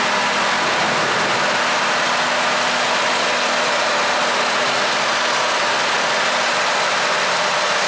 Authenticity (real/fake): real